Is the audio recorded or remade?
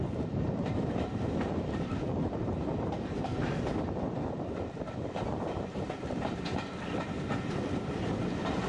remade